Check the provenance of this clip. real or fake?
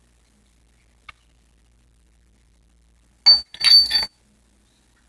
real